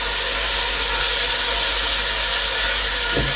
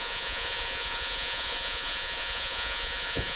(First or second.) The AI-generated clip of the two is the second